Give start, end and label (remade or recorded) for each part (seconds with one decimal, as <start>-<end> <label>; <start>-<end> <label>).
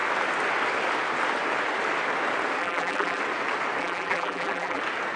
0.0-2.6 recorded; 2.6-3.2 remade; 3.2-3.8 recorded; 3.8-4.8 remade; 4.8-5.2 recorded